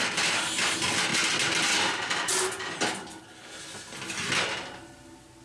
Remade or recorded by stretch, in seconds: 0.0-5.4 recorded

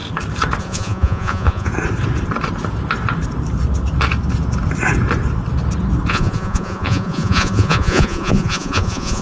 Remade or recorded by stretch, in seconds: 0.0-0.6 recorded; 0.6-1.7 remade; 1.7-6.1 recorded; 6.1-9.2 remade

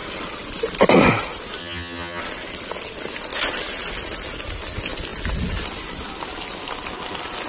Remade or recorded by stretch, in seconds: 0.0-1.6 recorded; 1.6-2.2 remade; 2.2-7.5 recorded